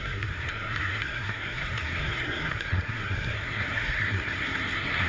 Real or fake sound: fake